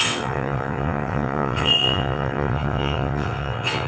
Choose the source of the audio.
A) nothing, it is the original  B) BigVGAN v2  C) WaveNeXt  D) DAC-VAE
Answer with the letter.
C